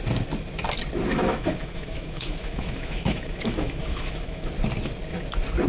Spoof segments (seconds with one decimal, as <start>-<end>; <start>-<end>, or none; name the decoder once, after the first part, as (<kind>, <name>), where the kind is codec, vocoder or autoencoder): 1.1-4.5 (autoencoder, DAC-VAE)